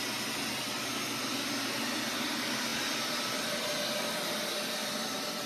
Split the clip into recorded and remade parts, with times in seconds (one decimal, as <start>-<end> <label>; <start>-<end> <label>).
0.0-5.5 recorded